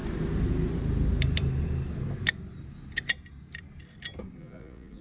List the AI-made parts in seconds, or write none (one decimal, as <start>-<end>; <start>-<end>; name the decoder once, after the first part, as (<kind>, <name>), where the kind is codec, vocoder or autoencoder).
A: 4.4-5.0 (vocoder, Vocos)